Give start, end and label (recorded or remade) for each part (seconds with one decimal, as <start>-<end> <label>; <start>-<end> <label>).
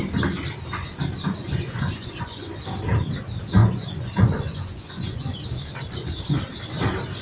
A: 0.0-1.4 recorded; 1.4-2.6 remade; 2.6-3.6 recorded; 3.6-5.4 remade; 5.4-7.2 recorded